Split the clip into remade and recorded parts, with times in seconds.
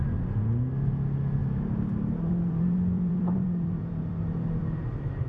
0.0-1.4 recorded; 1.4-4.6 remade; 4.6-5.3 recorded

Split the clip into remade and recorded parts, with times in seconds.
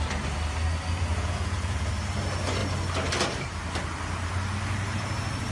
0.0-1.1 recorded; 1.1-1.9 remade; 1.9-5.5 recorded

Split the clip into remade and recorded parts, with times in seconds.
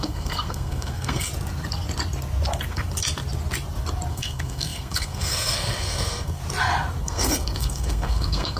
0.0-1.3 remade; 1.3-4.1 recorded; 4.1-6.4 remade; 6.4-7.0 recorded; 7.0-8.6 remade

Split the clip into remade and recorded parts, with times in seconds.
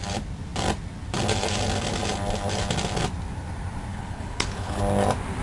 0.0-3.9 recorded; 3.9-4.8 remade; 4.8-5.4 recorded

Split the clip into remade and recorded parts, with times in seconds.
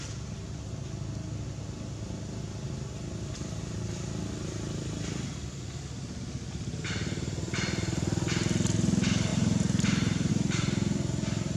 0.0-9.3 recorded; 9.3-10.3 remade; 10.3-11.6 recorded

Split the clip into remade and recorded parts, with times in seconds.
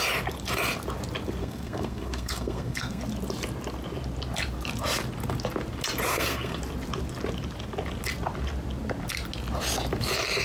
0.0-1.4 recorded; 1.4-3.0 remade; 3.0-6.1 recorded; 6.1-6.6 remade; 6.6-10.4 recorded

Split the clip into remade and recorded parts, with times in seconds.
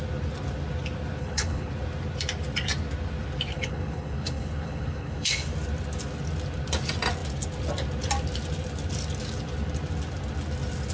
0.0-1.2 recorded; 1.2-1.7 remade; 1.7-3.5 recorded; 3.5-5.5 remade; 5.5-10.9 recorded